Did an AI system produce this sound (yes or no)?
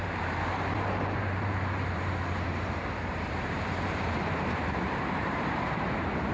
yes